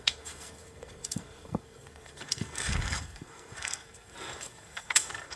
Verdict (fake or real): fake